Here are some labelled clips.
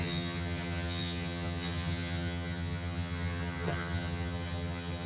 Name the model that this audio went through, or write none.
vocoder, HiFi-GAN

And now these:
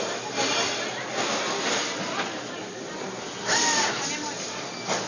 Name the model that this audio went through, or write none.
none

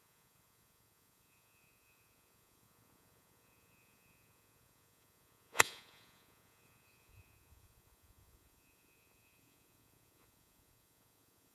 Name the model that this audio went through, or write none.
vocoder, Vocos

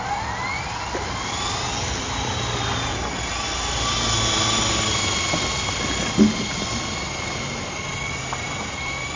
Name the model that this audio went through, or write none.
none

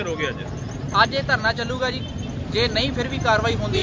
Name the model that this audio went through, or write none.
none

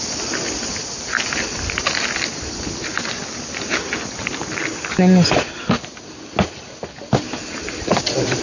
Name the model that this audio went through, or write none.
none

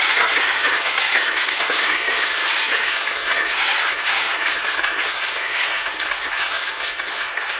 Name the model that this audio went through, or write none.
codec, SNAC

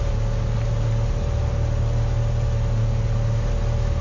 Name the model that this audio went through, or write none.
none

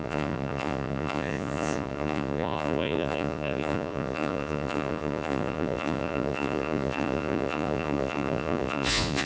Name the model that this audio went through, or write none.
vocoder, Vocos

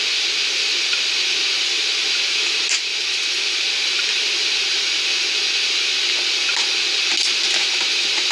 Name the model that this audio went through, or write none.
none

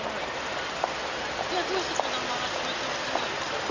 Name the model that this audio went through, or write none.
none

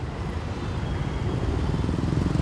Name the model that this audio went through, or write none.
none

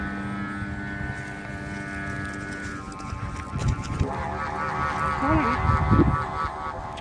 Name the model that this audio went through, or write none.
none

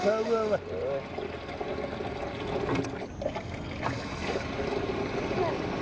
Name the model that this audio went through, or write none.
none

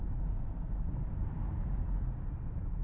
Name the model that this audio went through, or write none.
none